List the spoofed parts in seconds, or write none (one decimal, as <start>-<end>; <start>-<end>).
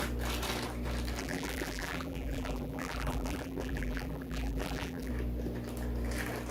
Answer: 1.2-5.1